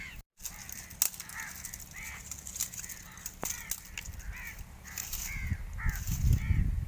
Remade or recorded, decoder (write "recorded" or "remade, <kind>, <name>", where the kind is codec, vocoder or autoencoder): recorded